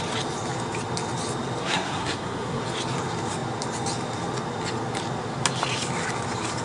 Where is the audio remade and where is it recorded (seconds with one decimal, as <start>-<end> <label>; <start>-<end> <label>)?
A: 0.0-1.6 recorded; 1.6-2.6 remade; 2.6-6.6 recorded

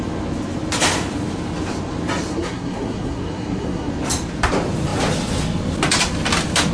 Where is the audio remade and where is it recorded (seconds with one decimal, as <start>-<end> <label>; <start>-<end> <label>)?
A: 0.0-2.3 recorded; 2.3-3.9 remade; 3.9-6.7 recorded

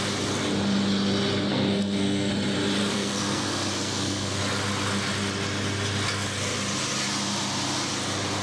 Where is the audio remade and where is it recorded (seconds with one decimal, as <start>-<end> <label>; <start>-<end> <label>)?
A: 0.0-1.5 recorded; 1.5-2.3 remade; 2.3-2.8 recorded; 2.8-4.4 remade; 4.4-8.4 recorded

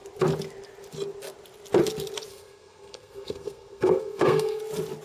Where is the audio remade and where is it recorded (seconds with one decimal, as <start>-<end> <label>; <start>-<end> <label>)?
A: 0.0-2.3 recorded; 2.3-4.6 remade; 4.6-5.0 recorded

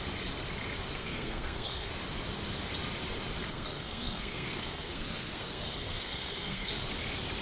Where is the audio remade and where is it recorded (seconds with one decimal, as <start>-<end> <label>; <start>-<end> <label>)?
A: 0.0-1.0 recorded; 1.0-1.9 remade; 1.9-3.5 recorded; 3.5-6.7 remade; 6.7-7.4 recorded